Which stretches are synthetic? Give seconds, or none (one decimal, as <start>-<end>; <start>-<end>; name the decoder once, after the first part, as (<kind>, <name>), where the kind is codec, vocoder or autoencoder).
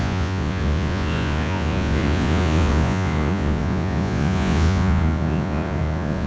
0.0-6.3 (vocoder, Vocos)